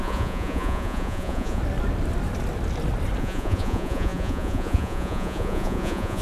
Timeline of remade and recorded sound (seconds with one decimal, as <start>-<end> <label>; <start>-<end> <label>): 0.0-1.6 remade; 1.6-3.2 recorded; 3.2-6.2 remade

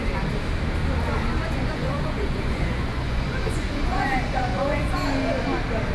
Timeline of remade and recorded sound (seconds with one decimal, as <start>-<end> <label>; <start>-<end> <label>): 0.0-1.4 recorded; 1.4-4.9 remade; 4.9-5.9 recorded